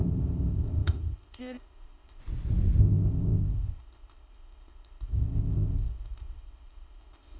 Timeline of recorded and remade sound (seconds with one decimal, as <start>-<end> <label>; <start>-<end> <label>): 0.0-2.2 remade; 2.2-2.8 recorded; 2.8-7.4 remade